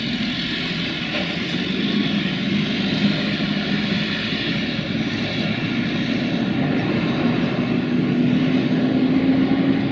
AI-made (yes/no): no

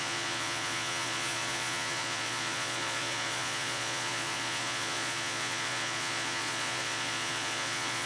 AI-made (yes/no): yes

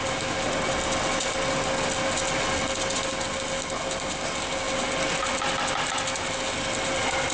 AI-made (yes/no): no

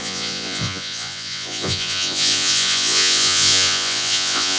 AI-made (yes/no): yes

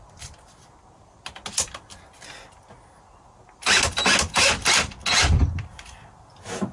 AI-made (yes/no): no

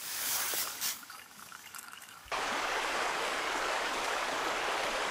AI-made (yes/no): yes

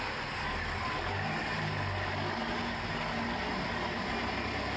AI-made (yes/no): no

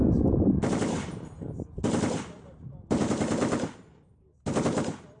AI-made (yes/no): no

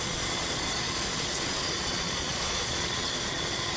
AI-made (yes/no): yes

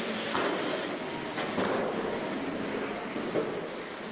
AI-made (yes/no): no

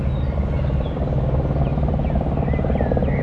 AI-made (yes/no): no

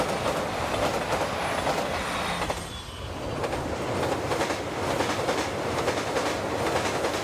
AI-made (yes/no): no